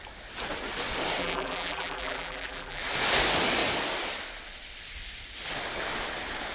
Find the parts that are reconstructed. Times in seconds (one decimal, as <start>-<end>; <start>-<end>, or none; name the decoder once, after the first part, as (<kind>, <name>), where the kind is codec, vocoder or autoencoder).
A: 1.2-2.8 (vocoder, BigVGAN v2)